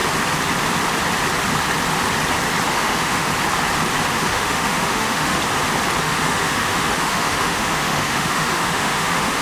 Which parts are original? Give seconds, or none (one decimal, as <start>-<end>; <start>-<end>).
0.0-2.7; 3.3-4.2; 5.4-6.0